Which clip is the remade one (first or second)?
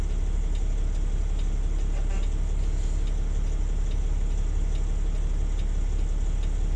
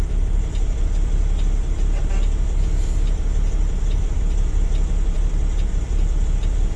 second